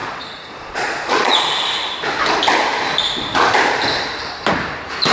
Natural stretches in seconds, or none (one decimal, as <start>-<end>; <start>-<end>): 1.5-5.1